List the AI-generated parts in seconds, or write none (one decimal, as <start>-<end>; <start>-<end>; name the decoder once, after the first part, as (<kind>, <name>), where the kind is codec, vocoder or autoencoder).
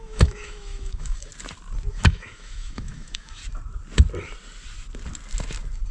0.0-1.3 (autoencoder, DAC-VAE); 1.9-3.4